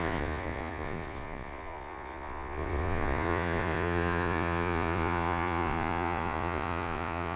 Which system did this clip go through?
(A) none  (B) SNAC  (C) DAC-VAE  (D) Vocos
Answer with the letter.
D